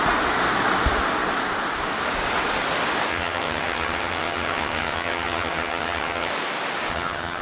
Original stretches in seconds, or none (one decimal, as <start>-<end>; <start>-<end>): 0.0-3.1; 6.3-6.9